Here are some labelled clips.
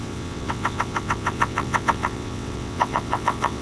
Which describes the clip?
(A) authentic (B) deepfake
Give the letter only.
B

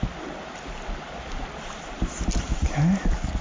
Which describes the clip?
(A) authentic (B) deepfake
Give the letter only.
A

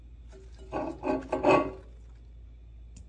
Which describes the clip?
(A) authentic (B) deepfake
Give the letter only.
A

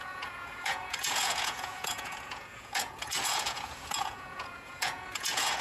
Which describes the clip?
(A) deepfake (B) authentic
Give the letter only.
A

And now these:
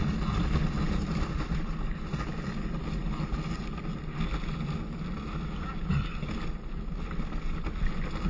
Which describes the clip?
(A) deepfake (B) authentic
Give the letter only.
B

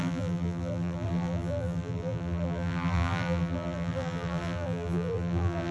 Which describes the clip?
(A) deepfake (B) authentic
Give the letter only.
A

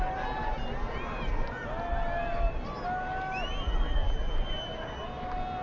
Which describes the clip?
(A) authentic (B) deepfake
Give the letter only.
A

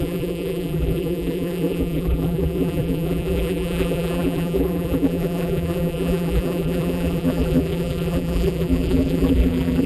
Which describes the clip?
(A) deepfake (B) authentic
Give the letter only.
A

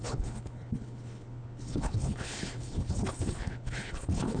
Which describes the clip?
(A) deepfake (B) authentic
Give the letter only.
A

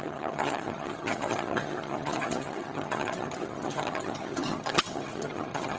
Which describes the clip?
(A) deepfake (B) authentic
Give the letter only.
A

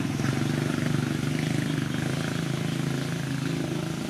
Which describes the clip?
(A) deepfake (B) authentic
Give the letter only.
B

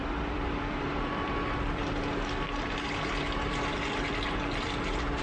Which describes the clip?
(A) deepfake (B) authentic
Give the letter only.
A